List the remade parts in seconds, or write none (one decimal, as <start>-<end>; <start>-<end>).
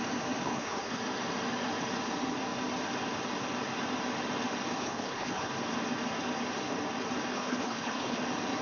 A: 0.4-1.0; 4.8-5.5; 7.3-8.2